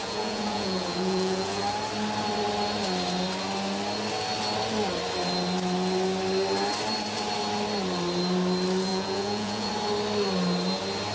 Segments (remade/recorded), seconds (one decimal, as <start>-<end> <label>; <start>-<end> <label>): 0.0-1.6 remade; 1.6-8.9 recorded; 8.9-9.7 remade; 9.7-11.1 recorded